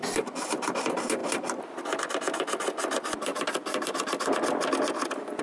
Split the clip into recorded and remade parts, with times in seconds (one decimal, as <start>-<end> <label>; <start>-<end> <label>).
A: 0.0-0.7 remade; 0.7-1.2 recorded; 1.2-1.8 remade; 1.8-3.3 recorded; 3.3-4.9 remade; 4.9-5.4 recorded